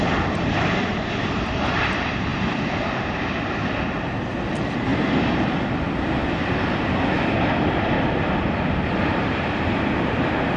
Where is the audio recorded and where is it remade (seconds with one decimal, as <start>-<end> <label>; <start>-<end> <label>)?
0.0-4.9 remade; 4.9-9.1 recorded; 9.1-10.6 remade